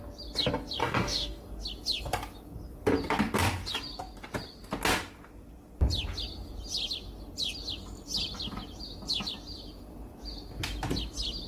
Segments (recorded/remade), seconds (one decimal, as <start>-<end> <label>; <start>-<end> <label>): 0.0-0.8 recorded; 0.8-1.4 remade; 1.4-11.5 recorded